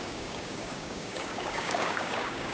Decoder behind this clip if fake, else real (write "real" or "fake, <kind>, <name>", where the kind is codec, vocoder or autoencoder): fake, codec, DAC